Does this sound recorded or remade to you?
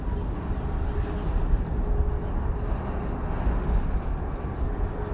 recorded